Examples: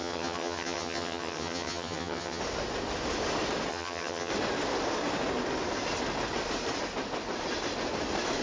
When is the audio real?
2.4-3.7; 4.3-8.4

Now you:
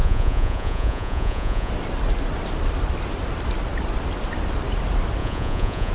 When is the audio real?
1.7-5.2

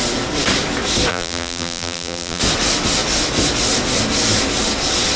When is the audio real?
0.0-1.1; 2.4-5.2

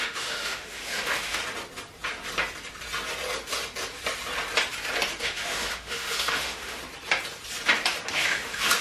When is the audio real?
1.4-5.2; 6.8-8.1

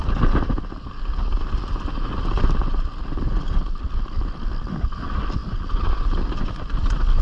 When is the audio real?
0.0-7.2

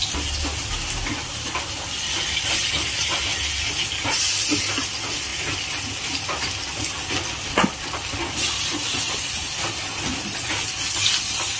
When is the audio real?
0.0-11.6

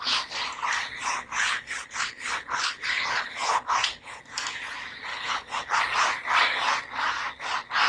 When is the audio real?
0.0-1.2; 4.2-5.1; 5.8-7.9

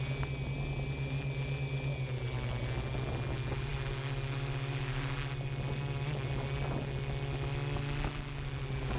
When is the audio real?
0.0-9.0